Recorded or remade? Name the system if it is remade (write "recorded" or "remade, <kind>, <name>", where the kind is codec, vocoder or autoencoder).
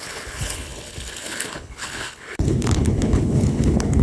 remade, codec, HILCodec